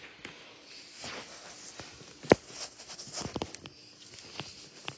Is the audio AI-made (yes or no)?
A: no